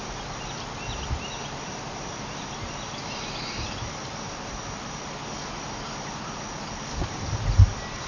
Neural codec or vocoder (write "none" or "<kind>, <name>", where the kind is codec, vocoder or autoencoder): none